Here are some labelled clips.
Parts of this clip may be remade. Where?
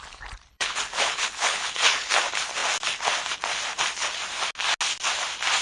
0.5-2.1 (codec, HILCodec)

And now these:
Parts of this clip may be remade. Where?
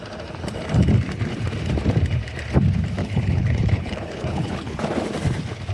3.0-4.8 (codec, HILCodec)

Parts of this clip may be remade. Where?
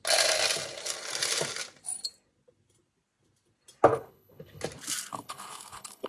3.9-4.6 (codec, HILCodec); 5.1-6.1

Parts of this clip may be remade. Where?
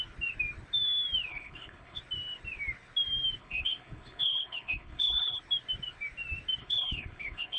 1.3-2.0 (codec, HILCodec); 3.4-5.4; 6.6-7.6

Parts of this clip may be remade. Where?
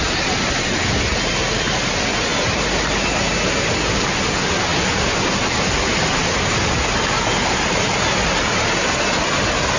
none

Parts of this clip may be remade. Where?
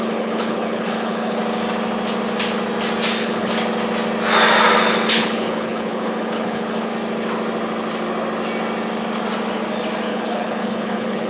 0.0-1.4 (codec, HILCodec); 3.1-3.5; 5.1-6.9; 10.1-11.3